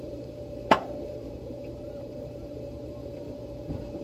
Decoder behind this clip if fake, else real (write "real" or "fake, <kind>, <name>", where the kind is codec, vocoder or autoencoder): fake, vocoder, BigVGAN v2